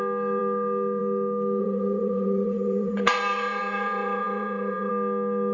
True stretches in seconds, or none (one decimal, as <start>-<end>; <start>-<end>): 0.0-1.6; 4.9-5.5